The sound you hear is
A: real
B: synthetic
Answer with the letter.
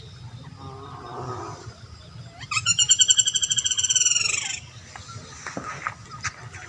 A